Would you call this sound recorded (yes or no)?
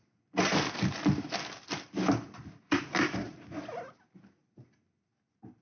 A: yes